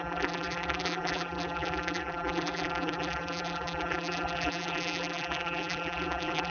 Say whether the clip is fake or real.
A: fake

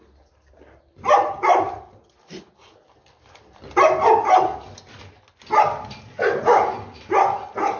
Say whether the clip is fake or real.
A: real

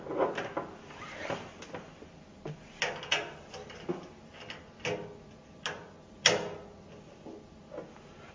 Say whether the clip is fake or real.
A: real